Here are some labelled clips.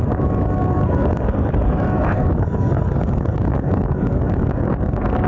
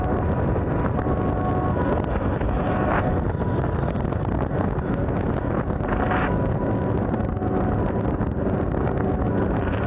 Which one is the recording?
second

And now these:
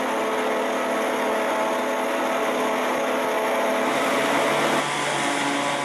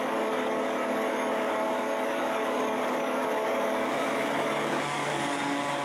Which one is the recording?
first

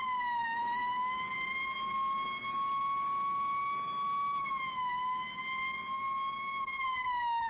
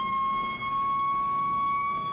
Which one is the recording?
first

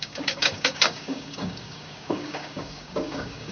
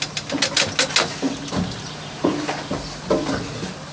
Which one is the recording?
second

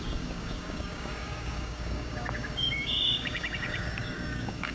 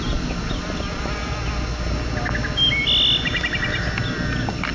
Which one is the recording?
second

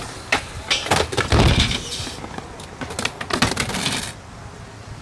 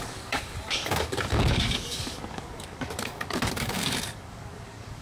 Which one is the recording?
first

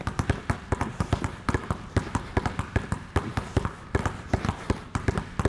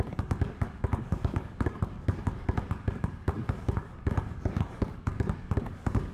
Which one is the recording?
first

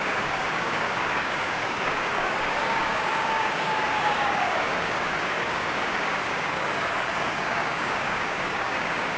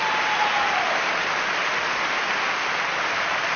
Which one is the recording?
second